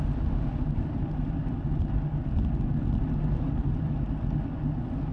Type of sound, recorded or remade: recorded